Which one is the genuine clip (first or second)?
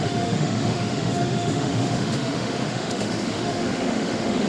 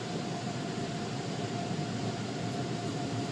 second